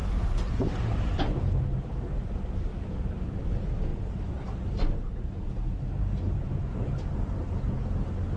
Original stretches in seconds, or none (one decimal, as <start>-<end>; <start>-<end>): 1.7-8.4